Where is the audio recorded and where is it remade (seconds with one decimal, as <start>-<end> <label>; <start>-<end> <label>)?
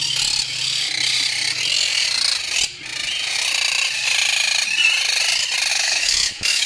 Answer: 0.0-5.7 recorded; 5.7-6.7 remade